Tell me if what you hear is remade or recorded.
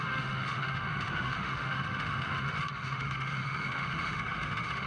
remade